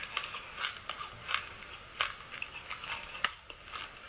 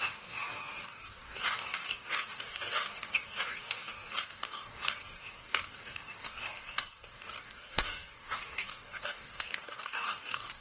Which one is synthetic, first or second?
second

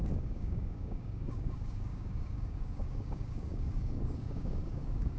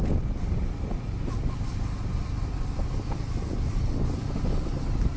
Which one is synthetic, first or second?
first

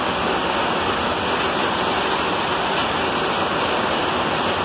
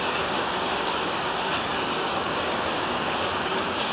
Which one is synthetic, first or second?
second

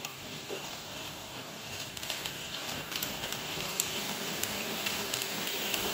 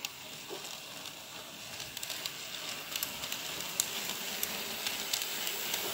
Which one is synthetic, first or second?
first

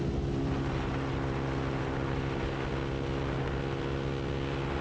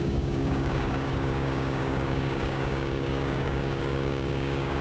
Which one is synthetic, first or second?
second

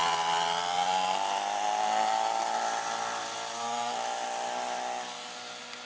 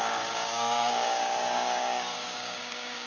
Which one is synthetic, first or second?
second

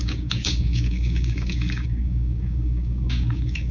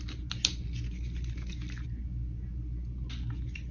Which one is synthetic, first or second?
first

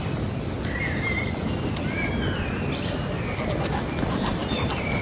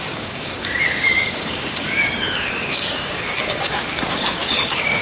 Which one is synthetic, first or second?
second